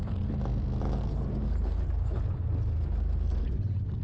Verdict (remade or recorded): recorded